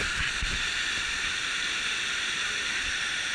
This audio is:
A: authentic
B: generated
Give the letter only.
B